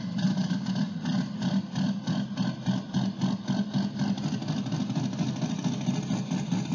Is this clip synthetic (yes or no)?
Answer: no